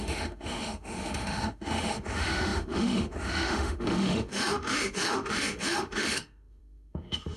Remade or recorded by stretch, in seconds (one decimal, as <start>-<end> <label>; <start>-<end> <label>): 0.0-7.4 remade

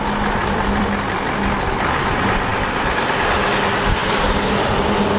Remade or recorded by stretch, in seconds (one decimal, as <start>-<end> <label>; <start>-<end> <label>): 0.0-0.4 recorded; 0.4-1.4 remade; 1.4-2.5 recorded; 2.5-3.5 remade; 3.5-5.2 recorded

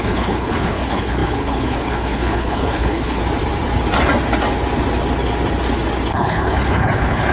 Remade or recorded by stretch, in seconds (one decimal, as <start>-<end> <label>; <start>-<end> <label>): 0.0-3.2 remade; 3.2-6.1 recorded; 6.1-7.3 remade

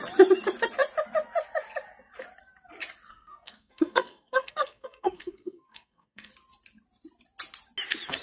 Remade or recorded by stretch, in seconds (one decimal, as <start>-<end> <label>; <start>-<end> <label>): 0.0-3.1 recorded; 3.1-6.3 remade; 6.3-8.2 recorded

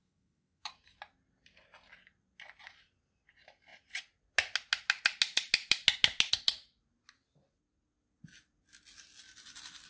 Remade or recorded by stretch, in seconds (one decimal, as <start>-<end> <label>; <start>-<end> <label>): 0.0-0.7 remade; 0.7-9.9 recorded